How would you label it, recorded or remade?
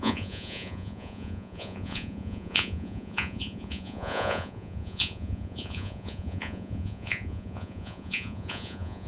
remade